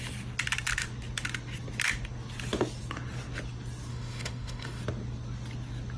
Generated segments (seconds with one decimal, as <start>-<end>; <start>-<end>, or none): 3.9-4.8